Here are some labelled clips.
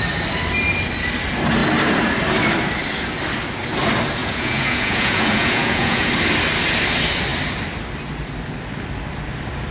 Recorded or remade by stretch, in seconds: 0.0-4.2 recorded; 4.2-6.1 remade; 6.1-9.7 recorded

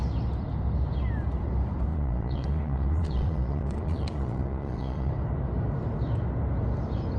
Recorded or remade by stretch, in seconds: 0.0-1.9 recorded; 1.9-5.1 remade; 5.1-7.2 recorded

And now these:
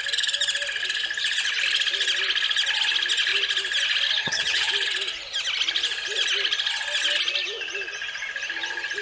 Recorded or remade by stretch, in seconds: 0.0-4.2 recorded; 4.2-4.7 remade; 4.7-9.0 recorded

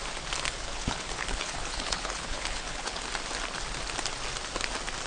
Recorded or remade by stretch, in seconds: 0.0-0.5 recorded; 0.5-3.0 remade; 3.0-5.1 recorded

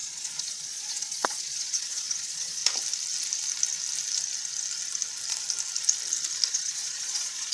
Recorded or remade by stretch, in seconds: 0.0-2.6 remade; 2.6-6.5 recorded; 6.5-7.5 remade

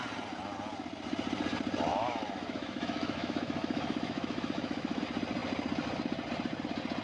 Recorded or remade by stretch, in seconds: 0.0-1.9 recorded; 1.9-5.0 remade; 5.0-7.0 recorded

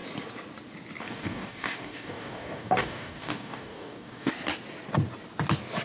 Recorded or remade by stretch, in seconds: 0.0-1.0 recorded; 1.0-4.3 remade; 4.3-5.8 recorded